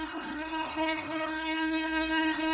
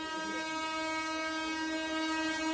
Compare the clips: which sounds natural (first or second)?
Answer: second